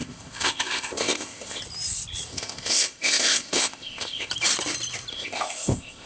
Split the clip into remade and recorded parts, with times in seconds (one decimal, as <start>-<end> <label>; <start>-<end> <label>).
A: 0.0-1.6 remade; 1.6-2.3 recorded; 2.3-4.3 remade; 4.3-5.1 recorded; 5.1-6.1 remade